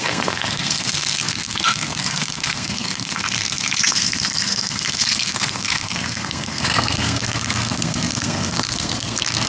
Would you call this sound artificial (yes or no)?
yes